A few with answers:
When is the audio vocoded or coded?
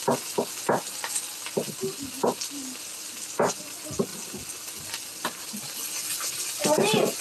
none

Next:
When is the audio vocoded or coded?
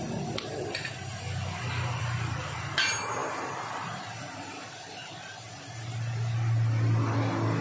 none